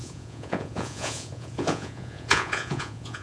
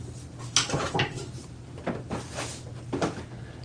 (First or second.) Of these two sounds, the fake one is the first